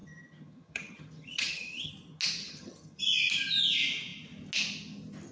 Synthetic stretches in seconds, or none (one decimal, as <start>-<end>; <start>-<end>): 0.0-1.9; 2.4-3.0